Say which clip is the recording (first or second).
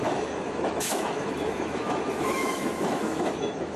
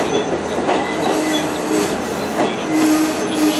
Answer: second